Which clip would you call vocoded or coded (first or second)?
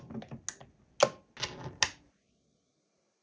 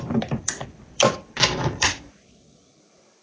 second